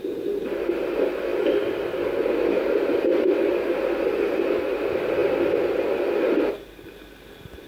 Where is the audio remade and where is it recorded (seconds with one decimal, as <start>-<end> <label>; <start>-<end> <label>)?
0.0-7.7 recorded